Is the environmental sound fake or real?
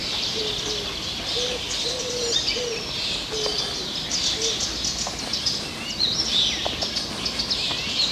real